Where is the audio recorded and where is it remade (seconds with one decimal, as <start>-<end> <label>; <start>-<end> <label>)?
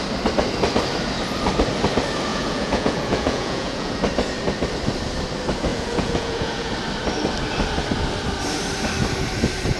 0.0-2.3 recorded; 2.3-4.0 remade; 4.0-5.7 recorded; 5.7-6.7 remade; 6.7-9.8 recorded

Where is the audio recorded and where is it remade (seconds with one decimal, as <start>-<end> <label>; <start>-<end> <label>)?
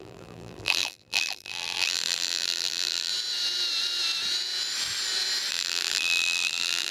0.0-3.1 remade; 3.1-5.5 recorded; 5.5-6.9 remade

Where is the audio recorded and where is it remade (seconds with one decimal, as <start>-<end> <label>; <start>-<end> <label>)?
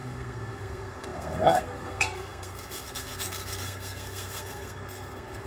0.0-5.5 remade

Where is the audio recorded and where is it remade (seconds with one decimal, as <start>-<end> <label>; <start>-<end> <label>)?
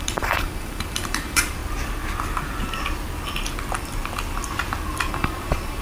0.0-1.6 remade; 1.6-5.1 recorded; 5.1-5.8 remade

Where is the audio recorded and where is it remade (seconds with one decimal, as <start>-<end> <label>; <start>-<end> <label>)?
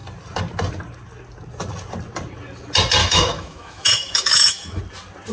0.0-3.0 recorded; 3.0-4.8 remade; 4.8-5.3 recorded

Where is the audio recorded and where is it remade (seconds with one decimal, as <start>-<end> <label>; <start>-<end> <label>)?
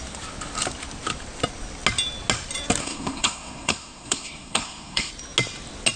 0.0-2.8 recorded; 2.8-5.1 remade; 5.1-6.0 recorded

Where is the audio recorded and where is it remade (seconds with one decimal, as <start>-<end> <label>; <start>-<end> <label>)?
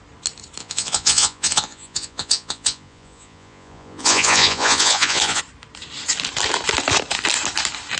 0.0-0.6 recorded; 0.6-5.4 remade; 5.4-8.0 recorded